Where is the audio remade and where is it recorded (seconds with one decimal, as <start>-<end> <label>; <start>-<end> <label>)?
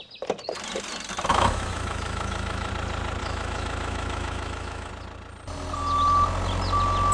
0.0-1.3 recorded; 1.3-2.7 remade; 2.7-3.2 recorded; 3.2-4.9 remade; 4.9-7.1 recorded